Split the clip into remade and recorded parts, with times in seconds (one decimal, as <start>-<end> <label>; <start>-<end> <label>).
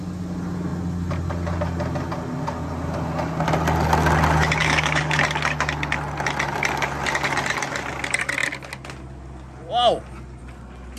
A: 0.0-4.6 recorded; 4.6-5.2 remade; 5.2-11.0 recorded